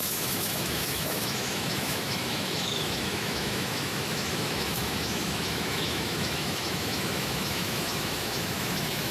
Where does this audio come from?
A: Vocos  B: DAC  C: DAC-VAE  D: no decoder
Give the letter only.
C